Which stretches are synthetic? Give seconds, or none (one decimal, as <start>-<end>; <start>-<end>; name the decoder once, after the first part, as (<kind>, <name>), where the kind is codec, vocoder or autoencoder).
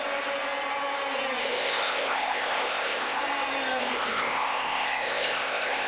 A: 1.4-3.2 (codec, ZipCodec); 3.8-5.9